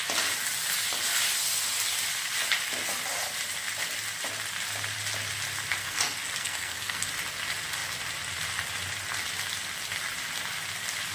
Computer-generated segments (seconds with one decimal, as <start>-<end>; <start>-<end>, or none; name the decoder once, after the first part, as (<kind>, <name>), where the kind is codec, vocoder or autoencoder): 5.8-7.1 (codec, SNAC)